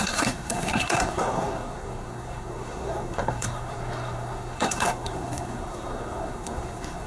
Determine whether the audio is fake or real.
fake